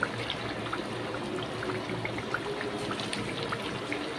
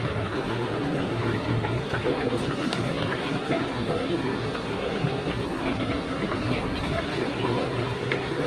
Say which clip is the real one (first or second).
first